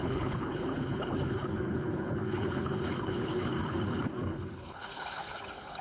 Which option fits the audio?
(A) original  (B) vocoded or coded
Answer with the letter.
B